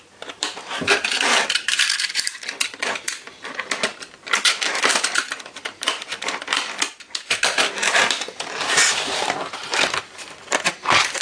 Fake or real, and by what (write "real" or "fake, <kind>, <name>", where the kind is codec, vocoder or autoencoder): fake, vocoder, BigVGAN v2